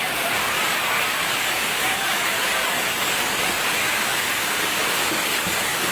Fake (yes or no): yes